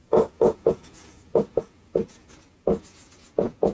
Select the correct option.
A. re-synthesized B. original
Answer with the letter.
A